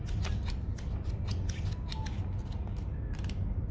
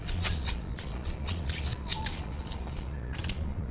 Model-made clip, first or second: second